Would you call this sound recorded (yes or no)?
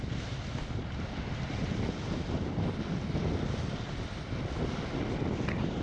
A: yes